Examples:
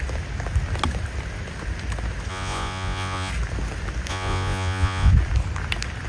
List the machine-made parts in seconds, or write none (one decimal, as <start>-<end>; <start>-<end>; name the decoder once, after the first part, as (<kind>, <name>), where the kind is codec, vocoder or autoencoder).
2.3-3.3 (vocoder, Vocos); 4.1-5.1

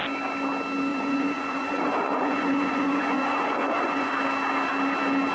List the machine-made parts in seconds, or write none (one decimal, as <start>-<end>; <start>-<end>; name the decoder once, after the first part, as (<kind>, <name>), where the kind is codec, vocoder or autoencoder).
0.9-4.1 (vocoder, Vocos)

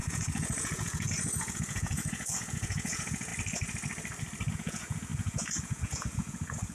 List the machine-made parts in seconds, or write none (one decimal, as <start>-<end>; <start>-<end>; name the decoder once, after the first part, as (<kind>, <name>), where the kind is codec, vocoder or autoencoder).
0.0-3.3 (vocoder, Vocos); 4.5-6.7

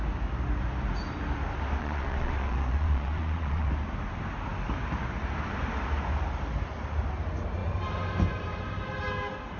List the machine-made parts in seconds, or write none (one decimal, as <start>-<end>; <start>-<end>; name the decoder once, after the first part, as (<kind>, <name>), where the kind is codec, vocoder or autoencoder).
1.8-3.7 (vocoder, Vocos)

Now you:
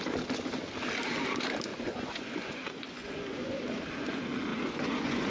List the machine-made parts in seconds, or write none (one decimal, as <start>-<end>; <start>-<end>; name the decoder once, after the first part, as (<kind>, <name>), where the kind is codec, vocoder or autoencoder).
1.7-3.8 (vocoder, Vocos); 4.5-5.3

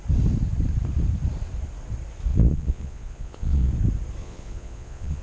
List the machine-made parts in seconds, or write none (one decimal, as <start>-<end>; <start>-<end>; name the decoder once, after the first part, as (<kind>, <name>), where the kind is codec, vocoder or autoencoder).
2.3-3.7 (vocoder, Vocos); 4.2-5.2

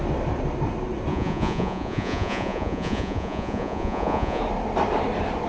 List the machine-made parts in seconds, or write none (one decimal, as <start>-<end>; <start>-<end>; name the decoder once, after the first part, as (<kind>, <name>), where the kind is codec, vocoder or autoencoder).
1.1-4.4 (vocoder, Vocos)

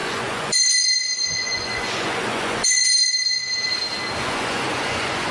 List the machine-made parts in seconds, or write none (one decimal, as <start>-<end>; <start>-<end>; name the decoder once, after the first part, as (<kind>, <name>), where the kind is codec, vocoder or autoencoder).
0.0-3.4 (vocoder, Vocos); 4.2-5.3